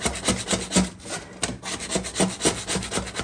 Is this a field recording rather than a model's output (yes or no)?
yes